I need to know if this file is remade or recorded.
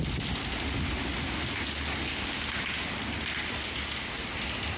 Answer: recorded